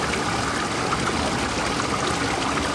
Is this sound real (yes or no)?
yes